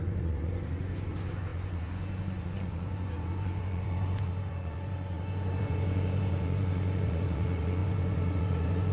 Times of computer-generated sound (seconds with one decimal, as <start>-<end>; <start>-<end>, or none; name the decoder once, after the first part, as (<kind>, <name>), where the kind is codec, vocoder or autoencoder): 0.0-8.9 (vocoder, Vocos)